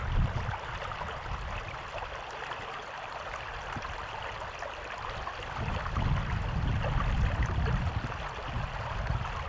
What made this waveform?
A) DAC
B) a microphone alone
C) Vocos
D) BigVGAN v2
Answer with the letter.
B